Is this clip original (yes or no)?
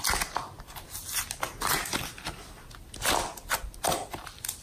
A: yes